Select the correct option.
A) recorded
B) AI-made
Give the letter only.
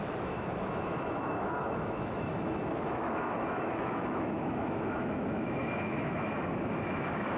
B